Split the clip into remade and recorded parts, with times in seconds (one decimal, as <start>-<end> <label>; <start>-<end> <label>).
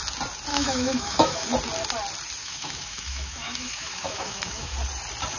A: 0.0-0.5 recorded; 0.5-1.5 remade; 1.5-2.4 recorded; 2.4-4.7 remade; 4.7-5.4 recorded